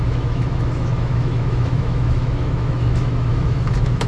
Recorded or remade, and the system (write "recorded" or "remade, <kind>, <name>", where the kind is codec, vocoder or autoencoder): remade, autoencoder, DAC-VAE